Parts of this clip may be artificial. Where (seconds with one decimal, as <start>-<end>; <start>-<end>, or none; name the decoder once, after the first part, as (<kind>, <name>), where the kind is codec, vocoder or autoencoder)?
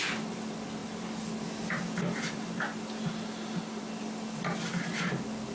none